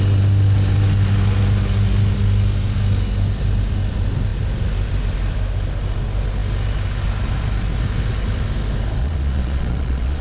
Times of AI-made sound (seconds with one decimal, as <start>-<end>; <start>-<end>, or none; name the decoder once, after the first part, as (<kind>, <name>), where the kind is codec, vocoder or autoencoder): 9.0-10.2 (vocoder, Vocos)